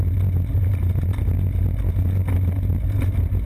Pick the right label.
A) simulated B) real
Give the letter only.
B